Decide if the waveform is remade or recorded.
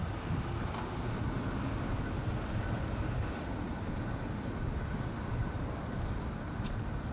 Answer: recorded